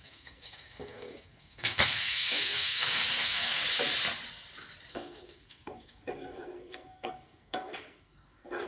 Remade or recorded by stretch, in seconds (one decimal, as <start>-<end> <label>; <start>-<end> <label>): 0.0-3.6 remade; 3.6-4.9 recorded; 4.9-8.7 remade